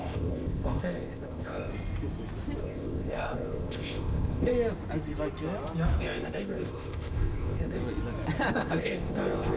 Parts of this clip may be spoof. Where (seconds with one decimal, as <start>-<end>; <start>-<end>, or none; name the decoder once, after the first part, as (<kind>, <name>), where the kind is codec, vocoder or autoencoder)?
0.0-1.7 (codec, ZipCodec); 2.6-4.5; 6.0-7.8; 8.5-9.6